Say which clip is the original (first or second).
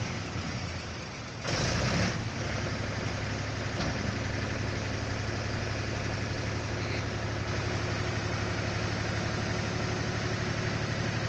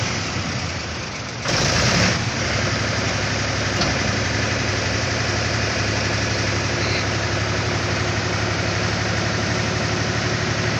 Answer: first